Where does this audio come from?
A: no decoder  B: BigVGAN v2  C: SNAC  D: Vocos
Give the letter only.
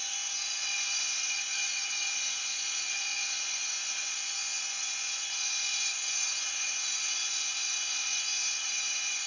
D